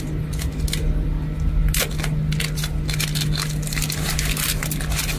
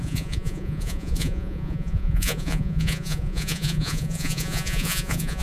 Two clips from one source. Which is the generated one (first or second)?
second